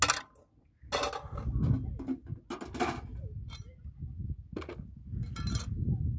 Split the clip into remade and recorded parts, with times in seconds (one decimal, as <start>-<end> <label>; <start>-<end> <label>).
0.0-6.2 recorded